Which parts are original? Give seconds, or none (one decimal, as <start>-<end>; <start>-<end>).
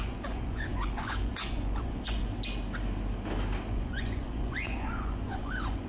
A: 2.3-3.7